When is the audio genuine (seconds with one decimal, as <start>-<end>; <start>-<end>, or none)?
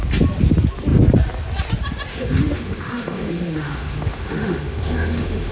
0.0-2.1